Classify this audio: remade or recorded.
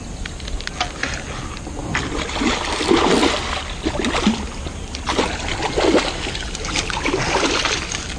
recorded